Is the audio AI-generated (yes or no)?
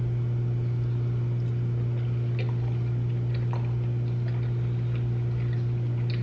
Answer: no